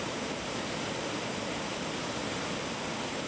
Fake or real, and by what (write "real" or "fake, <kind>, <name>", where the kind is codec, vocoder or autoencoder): real